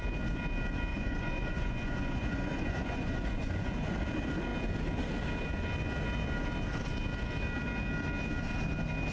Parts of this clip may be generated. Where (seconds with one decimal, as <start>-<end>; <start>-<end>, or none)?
0.9-3.9